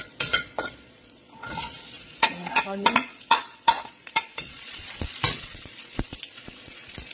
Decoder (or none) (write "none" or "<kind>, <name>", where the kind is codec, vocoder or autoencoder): vocoder, Vocos